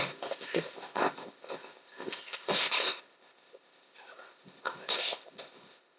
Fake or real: fake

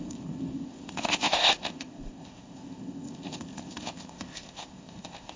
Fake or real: fake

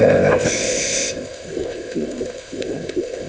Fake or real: fake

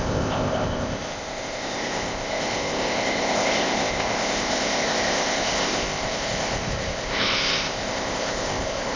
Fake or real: fake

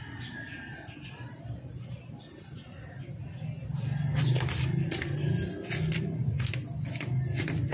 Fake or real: real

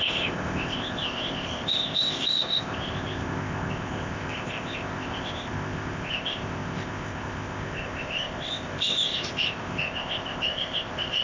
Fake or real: fake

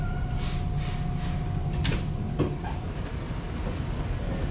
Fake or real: real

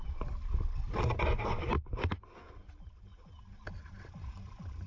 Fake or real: real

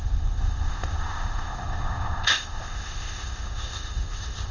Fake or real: fake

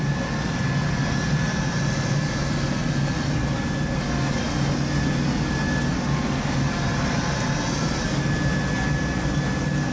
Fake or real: real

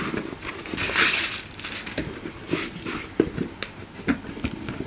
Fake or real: real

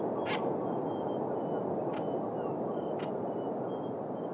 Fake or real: real